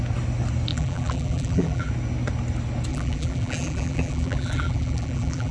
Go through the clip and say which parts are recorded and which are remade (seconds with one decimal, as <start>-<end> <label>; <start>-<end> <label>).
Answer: 0.0-0.7 recorded; 0.7-1.9 remade; 1.9-2.9 recorded; 2.9-5.5 remade